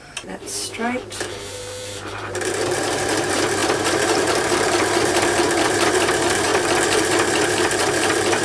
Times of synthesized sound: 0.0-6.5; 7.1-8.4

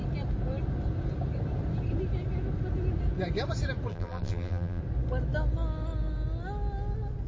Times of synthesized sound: 3.9-4.8

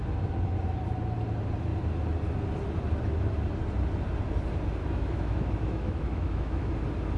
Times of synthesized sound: 4.8-6.7